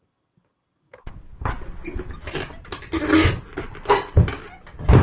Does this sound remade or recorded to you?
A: recorded